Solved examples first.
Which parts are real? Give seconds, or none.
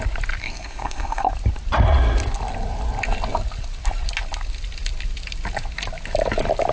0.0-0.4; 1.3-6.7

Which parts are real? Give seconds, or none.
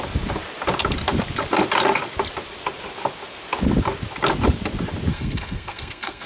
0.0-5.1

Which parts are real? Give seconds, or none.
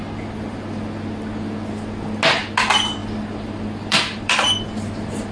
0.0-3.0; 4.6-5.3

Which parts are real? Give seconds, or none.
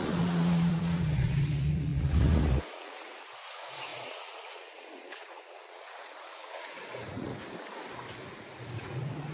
7.3-8.3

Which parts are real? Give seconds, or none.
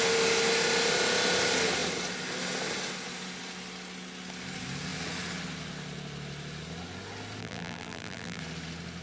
0.0-7.4; 8.4-9.0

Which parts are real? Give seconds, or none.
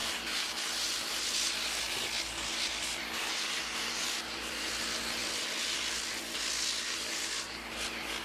1.8-5.2; 6.1-8.2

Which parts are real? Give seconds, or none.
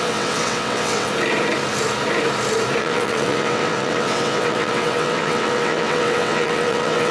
1.1-2.8